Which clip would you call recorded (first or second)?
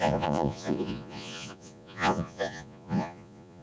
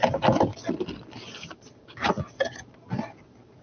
second